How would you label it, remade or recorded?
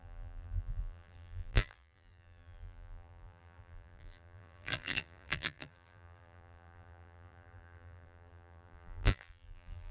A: remade